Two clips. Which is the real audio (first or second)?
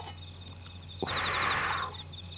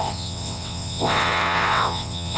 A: first